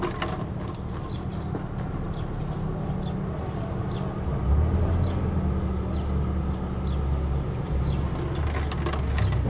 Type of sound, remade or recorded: recorded